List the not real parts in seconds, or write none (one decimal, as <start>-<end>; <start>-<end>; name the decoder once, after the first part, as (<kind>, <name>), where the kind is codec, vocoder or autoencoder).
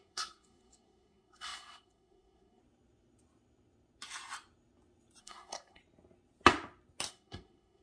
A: 0.0-2.6 (codec, SNAC); 5.2-5.8; 7.1-7.8